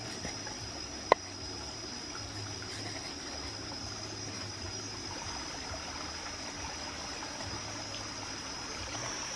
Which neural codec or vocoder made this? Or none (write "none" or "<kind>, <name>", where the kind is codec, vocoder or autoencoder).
none